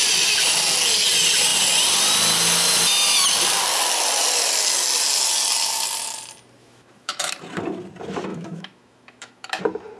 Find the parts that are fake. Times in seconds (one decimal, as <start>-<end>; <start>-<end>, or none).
6.6-7.3; 8.3-9.6